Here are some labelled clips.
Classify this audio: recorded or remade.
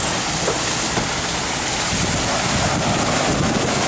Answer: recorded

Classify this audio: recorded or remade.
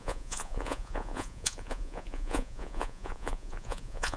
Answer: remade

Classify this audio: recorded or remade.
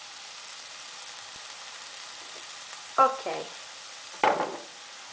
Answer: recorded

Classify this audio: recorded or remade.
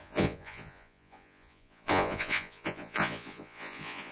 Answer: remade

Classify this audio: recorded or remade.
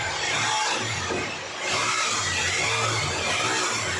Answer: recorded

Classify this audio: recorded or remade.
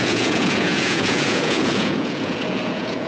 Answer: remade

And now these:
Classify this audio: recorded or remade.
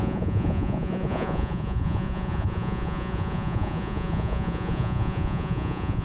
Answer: remade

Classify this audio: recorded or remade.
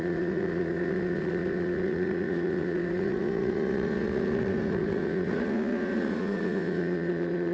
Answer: remade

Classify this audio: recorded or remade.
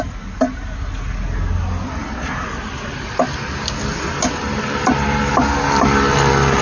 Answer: recorded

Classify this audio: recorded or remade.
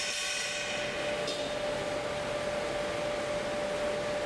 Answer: recorded